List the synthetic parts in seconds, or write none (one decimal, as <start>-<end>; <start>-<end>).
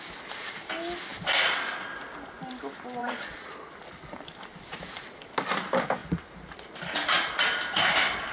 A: 3.0-3.7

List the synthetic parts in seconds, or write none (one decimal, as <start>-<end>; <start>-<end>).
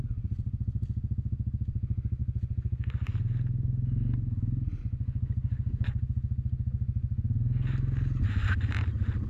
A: none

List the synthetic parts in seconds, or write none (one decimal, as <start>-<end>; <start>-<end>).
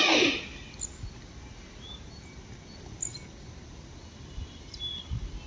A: none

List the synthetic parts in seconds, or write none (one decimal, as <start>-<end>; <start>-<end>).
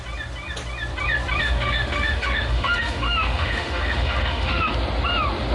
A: 1.4-4.7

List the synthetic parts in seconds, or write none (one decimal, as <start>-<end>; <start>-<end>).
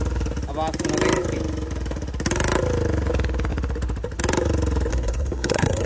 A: 4.9-5.9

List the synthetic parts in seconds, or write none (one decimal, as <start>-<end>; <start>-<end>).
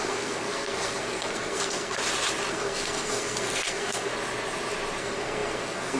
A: 0.0-2.0; 2.5-4.1; 5.0-6.0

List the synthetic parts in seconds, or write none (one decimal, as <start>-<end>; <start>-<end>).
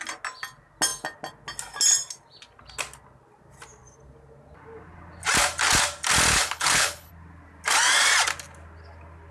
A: 6.3-7.1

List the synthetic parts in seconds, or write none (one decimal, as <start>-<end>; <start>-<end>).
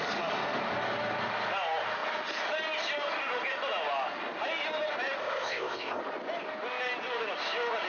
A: 5.2-6.0